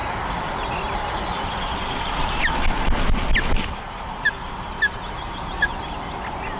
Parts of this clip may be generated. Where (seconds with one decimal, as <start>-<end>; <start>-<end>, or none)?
0.0-1.2